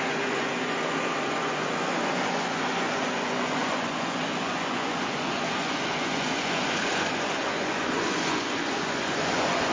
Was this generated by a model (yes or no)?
yes